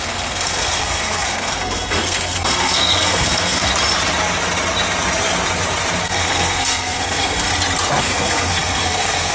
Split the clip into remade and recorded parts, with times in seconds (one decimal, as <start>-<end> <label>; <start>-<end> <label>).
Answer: 0.0-3.7 remade; 3.7-6.0 recorded; 6.0-7.5 remade; 7.5-8.0 recorded; 8.0-9.3 remade